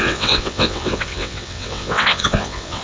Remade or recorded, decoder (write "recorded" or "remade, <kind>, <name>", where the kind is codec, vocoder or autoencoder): remade, vocoder, WaveNeXt